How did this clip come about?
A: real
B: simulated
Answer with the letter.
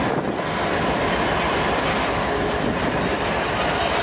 A